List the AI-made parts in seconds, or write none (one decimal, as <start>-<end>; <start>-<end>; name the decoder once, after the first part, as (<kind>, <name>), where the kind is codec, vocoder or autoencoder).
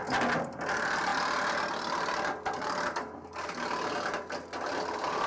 none